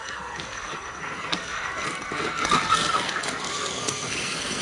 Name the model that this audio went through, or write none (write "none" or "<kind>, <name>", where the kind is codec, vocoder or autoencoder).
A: codec, SNAC